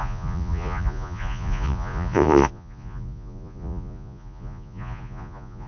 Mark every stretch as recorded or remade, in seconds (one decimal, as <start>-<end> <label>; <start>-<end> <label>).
0.0-5.7 remade